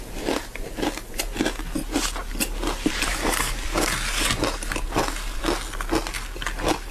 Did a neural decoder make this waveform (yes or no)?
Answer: no